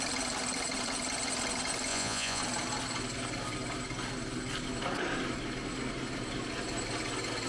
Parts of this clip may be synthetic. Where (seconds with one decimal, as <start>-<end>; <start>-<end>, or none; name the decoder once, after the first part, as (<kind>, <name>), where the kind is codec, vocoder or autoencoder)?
1.9-2.4 (vocoder, Vocos)